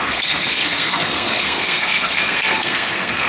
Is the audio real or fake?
fake